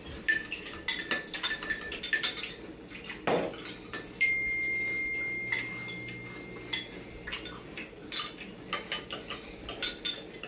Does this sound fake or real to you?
real